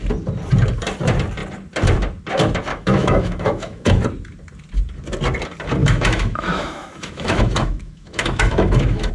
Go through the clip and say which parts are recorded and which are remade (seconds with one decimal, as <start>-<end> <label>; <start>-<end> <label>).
0.0-2.7 recorded; 2.7-4.0 remade; 4.0-5.8 recorded; 5.8-9.1 remade